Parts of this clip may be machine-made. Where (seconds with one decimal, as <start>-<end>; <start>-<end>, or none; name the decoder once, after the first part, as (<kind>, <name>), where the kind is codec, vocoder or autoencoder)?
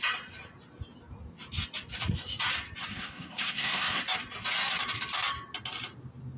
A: 2.9-4.0 (codec, SNAC)